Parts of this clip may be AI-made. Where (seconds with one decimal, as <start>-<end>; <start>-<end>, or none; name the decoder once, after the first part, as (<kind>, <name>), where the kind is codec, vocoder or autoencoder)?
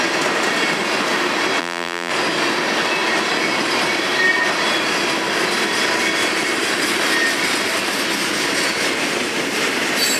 1.6-2.1 (vocoder, BigVGAN v2)